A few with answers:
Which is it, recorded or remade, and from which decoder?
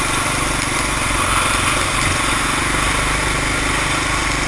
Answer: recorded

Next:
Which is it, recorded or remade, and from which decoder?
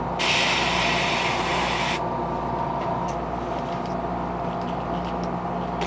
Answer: recorded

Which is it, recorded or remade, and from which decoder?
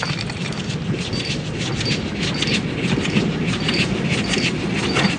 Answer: recorded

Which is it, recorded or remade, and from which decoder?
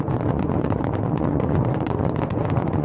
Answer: remade, vocoder, Vocos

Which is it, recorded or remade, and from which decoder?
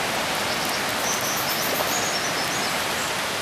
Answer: recorded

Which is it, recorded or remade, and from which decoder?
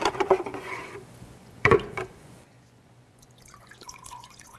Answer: remade, vocoder, Vocos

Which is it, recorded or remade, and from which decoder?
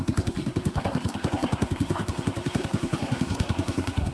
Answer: remade, codec, SNAC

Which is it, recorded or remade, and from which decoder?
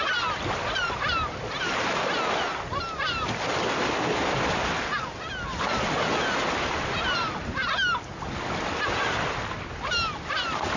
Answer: recorded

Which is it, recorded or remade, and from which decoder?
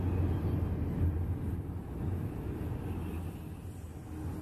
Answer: recorded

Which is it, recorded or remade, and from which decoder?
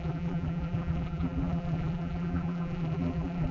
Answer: remade, vocoder, BigVGAN v2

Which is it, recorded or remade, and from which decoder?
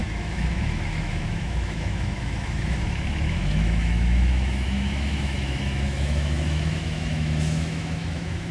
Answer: remade, autoencoder, DAC-VAE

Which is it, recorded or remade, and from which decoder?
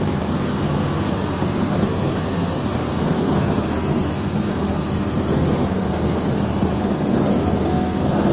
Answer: remade, codec, SNAC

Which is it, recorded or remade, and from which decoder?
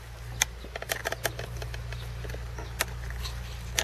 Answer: recorded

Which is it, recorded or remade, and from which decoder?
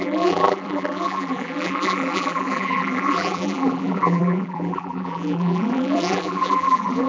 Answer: remade, vocoder, BigVGAN v2